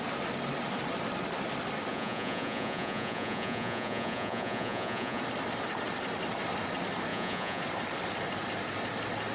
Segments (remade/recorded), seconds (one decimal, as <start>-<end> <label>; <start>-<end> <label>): 0.0-1.9 recorded; 1.9-5.2 remade; 5.2-7.1 recorded; 7.1-7.6 remade; 7.6-9.3 recorded